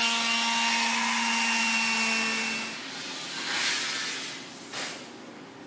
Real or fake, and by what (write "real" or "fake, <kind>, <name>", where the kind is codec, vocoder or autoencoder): real